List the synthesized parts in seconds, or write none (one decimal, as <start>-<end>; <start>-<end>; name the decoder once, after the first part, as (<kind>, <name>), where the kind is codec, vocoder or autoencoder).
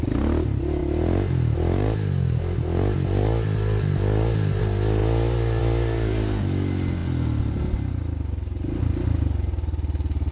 none